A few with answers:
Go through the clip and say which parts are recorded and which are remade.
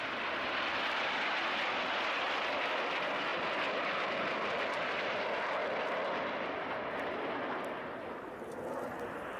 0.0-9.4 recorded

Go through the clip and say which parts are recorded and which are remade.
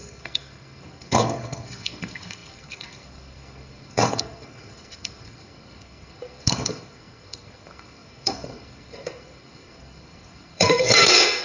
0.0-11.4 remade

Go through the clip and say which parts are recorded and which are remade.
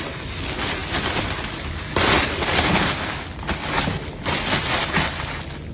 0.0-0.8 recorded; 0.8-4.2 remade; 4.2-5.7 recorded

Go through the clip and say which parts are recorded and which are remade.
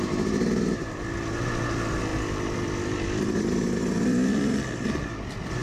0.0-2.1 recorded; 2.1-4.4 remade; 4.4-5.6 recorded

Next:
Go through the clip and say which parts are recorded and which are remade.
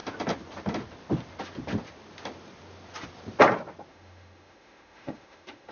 0.0-3.9 recorded; 3.9-5.7 remade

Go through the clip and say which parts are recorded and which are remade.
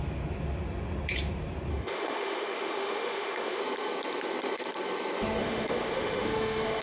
0.0-1.7 recorded; 1.7-3.6 remade; 3.6-5.4 recorded; 5.4-6.8 remade